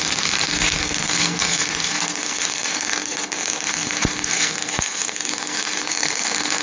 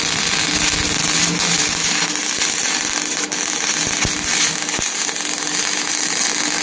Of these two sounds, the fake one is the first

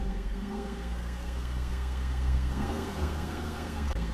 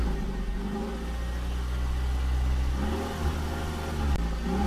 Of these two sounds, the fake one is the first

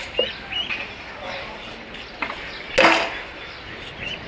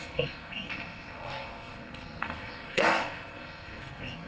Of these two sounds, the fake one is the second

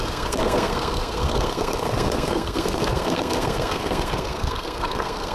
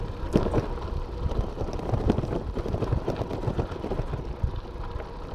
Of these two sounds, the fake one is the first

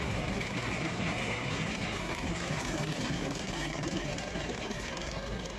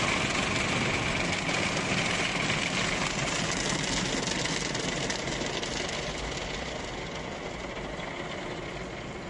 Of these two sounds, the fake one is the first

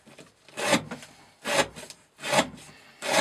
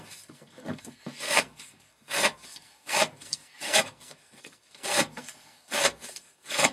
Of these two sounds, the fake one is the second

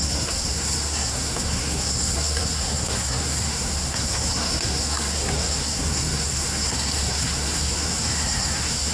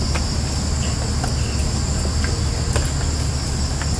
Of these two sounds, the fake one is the first